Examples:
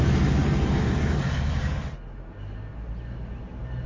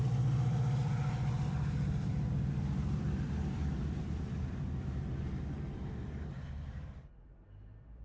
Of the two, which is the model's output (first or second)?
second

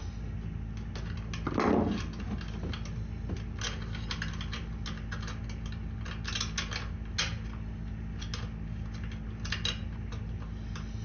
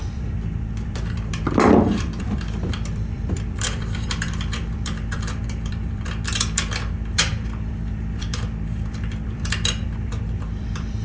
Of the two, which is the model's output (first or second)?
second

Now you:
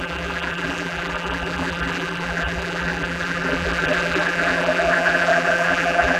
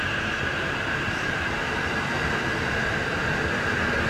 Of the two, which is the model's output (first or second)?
first